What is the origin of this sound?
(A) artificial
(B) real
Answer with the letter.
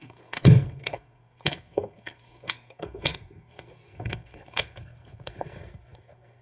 A